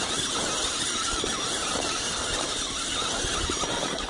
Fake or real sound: real